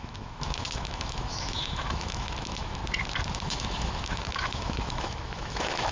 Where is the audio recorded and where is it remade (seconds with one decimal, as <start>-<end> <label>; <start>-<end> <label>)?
0.0-2.8 remade; 2.8-3.3 recorded; 3.3-5.9 remade